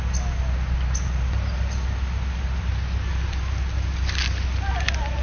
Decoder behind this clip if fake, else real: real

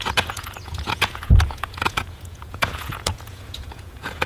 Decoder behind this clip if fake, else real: fake, vocoder, Vocos